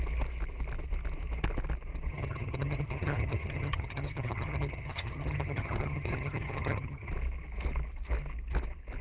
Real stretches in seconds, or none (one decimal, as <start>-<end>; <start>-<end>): 0.0-2.1; 7.1-9.0